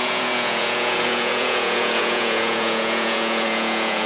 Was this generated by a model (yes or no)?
yes